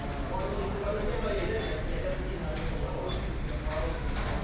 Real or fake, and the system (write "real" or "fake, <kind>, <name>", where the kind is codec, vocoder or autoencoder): real